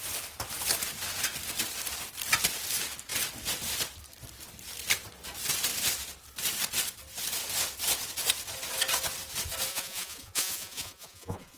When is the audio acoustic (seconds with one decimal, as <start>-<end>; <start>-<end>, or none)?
0.0-9.7